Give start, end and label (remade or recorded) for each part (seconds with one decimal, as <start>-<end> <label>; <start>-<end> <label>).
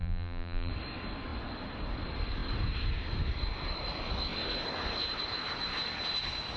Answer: 0.0-0.7 remade; 0.7-6.6 recorded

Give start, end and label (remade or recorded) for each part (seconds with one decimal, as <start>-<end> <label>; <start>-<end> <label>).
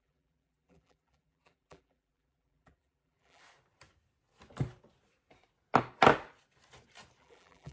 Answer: 0.0-3.4 remade; 3.4-7.2 recorded; 7.2-7.7 remade